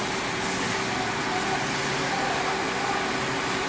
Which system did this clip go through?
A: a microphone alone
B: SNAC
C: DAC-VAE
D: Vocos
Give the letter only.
A